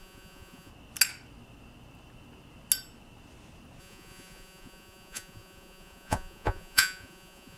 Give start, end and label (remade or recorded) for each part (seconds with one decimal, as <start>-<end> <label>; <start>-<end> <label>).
0.0-0.7 remade; 0.7-3.8 recorded; 3.8-7.6 remade